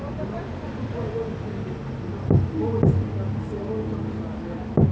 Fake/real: real